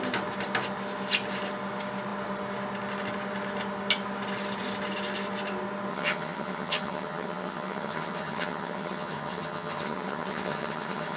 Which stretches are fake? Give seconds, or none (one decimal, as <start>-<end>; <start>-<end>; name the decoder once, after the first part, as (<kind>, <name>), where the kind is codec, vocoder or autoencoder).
5.9-11.2 (vocoder, HiFi-GAN)